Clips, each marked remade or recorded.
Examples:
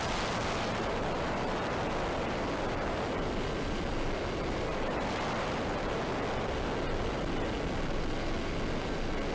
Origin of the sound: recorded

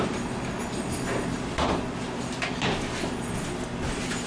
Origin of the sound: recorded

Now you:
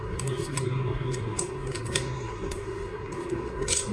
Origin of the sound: remade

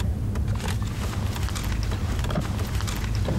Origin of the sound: recorded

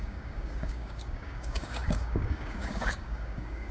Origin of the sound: remade